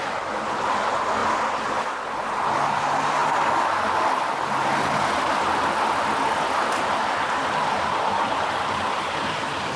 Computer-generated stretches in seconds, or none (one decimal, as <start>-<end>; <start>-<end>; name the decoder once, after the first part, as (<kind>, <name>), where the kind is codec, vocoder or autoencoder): none